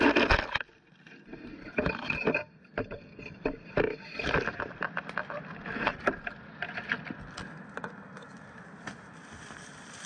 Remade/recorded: recorded